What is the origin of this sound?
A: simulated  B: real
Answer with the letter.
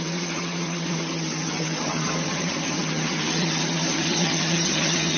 A